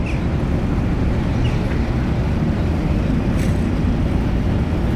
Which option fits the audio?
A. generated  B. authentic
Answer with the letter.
B